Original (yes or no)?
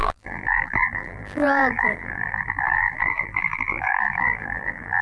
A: no